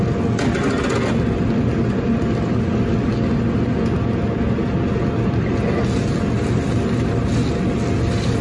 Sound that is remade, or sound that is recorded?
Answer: recorded